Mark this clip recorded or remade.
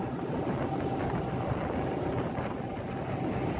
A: recorded